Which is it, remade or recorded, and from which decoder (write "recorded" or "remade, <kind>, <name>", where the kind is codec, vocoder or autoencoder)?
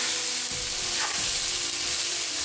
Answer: recorded